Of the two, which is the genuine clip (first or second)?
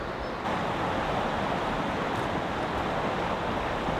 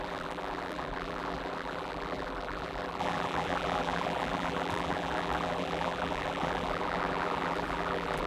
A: first